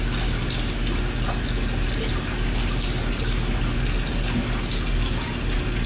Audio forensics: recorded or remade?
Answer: recorded